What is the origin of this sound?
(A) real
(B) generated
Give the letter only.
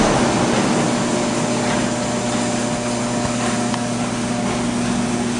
A